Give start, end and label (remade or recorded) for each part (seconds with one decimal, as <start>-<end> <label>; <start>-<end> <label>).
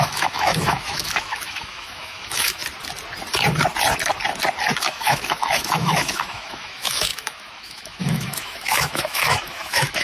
0.0-2.6 remade; 2.6-4.8 recorded; 4.8-10.0 remade